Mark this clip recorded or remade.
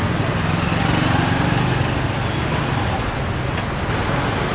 recorded